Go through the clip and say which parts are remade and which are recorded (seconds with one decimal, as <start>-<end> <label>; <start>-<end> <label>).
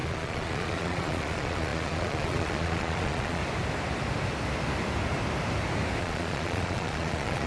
0.0-3.4 remade; 3.4-6.0 recorded; 6.0-7.5 remade